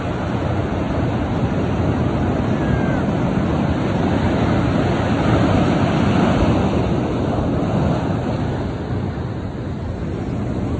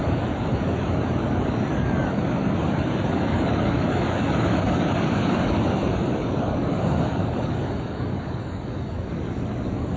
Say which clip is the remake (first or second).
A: second